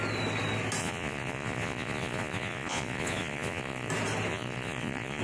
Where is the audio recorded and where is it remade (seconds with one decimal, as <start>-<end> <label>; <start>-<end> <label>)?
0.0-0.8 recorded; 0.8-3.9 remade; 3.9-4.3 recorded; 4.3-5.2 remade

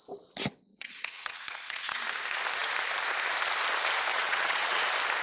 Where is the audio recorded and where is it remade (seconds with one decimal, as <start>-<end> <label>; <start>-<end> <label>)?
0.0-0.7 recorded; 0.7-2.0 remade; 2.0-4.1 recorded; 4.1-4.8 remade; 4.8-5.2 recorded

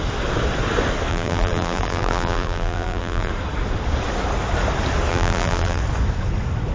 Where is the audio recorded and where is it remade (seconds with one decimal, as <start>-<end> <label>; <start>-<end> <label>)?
0.0-1.1 recorded; 1.1-3.3 remade; 3.3-5.1 recorded; 5.1-5.8 remade; 5.8-6.7 recorded